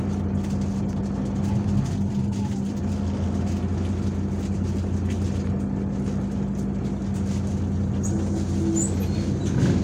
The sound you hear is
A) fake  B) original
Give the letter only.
B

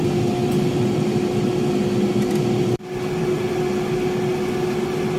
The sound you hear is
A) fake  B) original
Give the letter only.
B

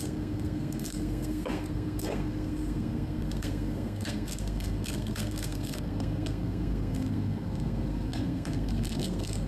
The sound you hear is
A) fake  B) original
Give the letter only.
A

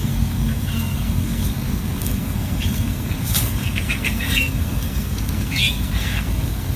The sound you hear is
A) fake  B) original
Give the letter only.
A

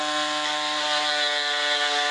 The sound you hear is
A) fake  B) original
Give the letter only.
B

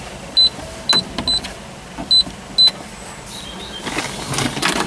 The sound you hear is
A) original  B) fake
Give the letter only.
A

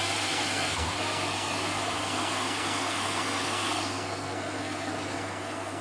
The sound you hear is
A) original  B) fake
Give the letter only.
B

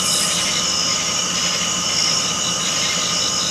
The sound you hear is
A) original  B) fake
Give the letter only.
A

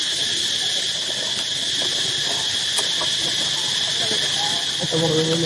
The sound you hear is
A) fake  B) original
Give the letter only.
B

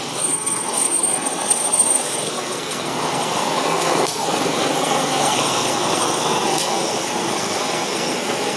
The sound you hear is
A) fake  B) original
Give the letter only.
A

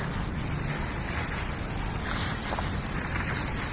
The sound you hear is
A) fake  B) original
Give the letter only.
B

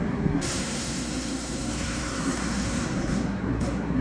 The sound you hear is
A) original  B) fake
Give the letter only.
B